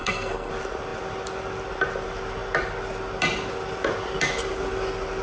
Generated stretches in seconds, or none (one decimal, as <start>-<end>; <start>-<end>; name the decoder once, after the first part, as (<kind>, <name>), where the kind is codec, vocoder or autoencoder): 0.0-0.5 (codec, SNAC)